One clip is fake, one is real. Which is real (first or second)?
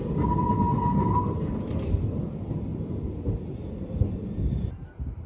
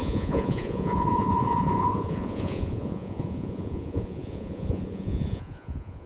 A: first